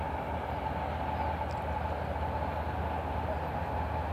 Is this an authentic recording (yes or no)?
yes